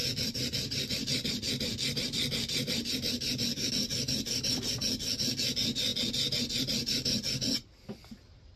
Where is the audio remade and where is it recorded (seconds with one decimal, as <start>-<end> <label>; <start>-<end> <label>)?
0.0-8.6 recorded